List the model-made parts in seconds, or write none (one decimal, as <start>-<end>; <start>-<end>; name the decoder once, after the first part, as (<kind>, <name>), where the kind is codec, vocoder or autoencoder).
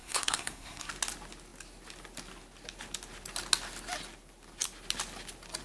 0.0-0.9 (codec, SNAC)